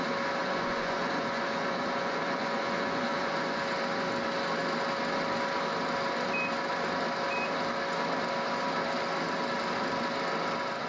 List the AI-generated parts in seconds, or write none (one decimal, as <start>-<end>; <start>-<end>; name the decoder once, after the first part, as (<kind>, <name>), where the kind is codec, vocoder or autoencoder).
0.4-3.6 (vocoder, Vocos)